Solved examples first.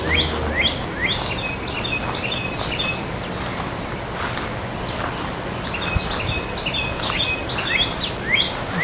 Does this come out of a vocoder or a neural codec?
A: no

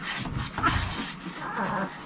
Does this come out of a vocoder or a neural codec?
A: no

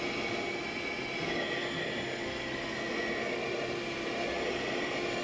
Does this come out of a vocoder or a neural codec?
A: no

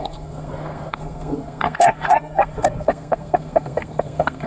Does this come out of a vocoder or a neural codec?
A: yes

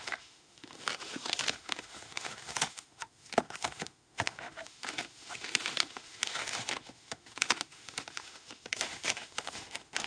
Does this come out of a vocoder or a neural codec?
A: yes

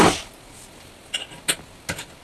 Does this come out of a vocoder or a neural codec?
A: no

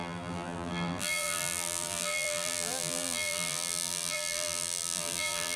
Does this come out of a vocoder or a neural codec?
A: yes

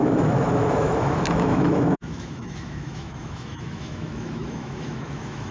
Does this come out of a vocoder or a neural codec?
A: yes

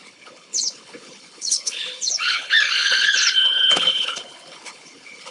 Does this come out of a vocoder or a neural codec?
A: yes